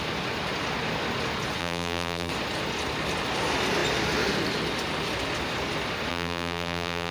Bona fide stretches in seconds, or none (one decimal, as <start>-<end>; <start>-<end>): 0.0-1.6; 2.3-6.1